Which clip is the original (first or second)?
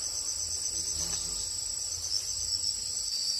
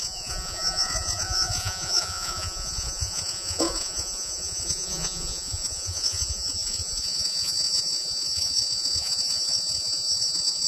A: first